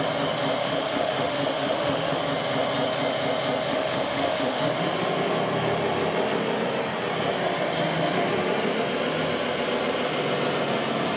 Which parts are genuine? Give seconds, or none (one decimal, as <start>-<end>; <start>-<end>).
0.0-0.6; 2.2-3.7; 4.6-11.2